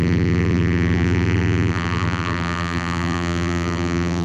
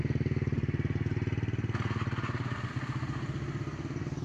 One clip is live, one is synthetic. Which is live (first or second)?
second